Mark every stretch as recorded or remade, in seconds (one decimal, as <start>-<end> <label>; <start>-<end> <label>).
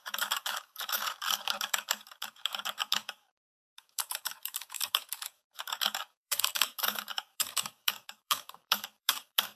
0.0-9.6 remade